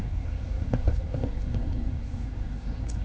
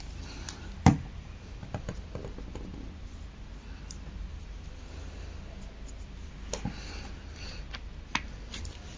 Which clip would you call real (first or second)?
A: second